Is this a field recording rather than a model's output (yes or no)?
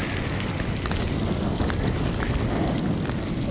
yes